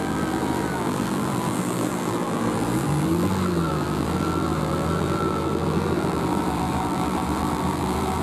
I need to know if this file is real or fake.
fake